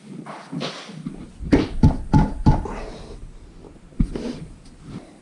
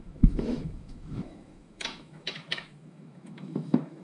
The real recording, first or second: first